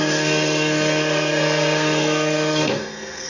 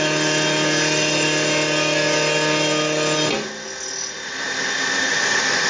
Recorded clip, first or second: second